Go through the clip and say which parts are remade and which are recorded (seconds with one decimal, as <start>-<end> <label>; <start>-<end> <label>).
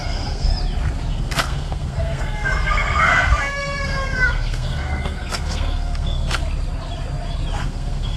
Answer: 0.0-0.5 remade; 0.5-1.1 recorded; 1.1-6.4 remade; 6.4-7.6 recorded; 7.6-8.2 remade